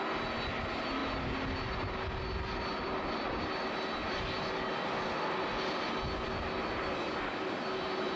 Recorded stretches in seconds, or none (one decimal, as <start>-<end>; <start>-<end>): 0.0-8.2